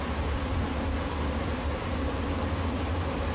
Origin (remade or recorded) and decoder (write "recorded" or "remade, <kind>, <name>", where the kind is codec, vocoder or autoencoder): recorded